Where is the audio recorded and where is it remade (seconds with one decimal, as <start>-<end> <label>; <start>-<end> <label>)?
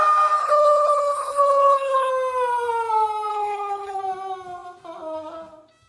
0.0-0.4 recorded; 0.4-2.1 remade; 2.1-3.3 recorded; 3.3-4.0 remade; 4.0-5.9 recorded